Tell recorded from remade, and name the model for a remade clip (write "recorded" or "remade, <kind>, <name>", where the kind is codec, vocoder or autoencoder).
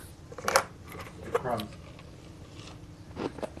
recorded